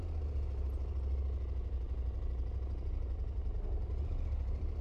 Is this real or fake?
real